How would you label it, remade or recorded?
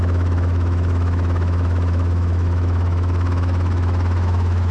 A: remade